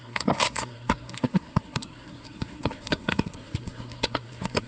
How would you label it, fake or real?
fake